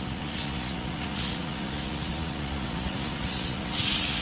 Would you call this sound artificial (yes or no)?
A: yes